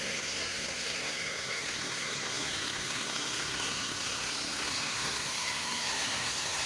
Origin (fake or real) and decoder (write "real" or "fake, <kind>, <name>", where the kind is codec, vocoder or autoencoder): fake, codec, SNAC